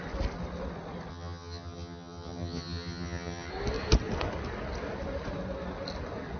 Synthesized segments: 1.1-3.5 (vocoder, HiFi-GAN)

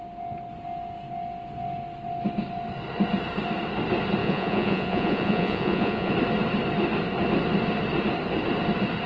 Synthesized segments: 4.2-6.1 (vocoder, Vocos)

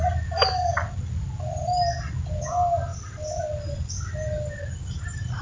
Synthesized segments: none